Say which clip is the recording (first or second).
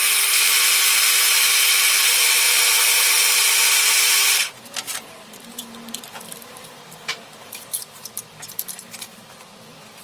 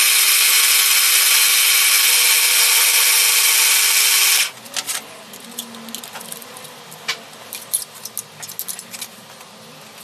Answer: second